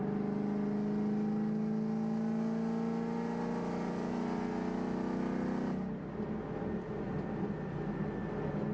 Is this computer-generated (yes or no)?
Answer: no